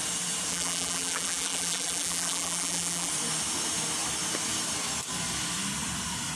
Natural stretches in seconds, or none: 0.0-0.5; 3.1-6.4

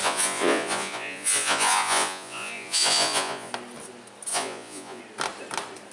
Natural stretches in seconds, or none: 3.5-4.3; 5.0-5.9

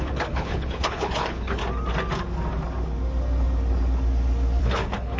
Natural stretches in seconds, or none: 1.6-4.6

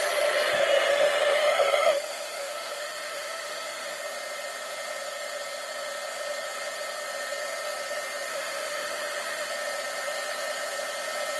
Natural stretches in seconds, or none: 0.0-0.9; 4.0-8.3; 9.5-11.4

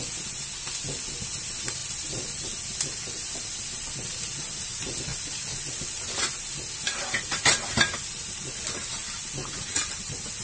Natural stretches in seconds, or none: 0.0-1.8; 2.4-10.4